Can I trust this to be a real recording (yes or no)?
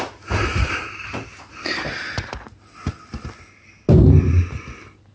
yes